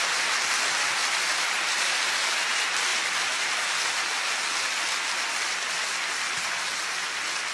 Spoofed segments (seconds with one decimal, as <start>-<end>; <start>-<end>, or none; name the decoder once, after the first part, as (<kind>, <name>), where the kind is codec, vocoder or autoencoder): none